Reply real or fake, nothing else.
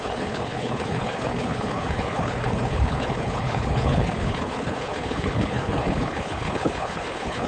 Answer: fake